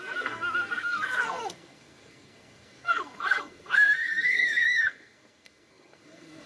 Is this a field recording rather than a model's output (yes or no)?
no